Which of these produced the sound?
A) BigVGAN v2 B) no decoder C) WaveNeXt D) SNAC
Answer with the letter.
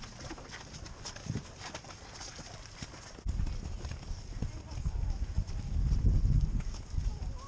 B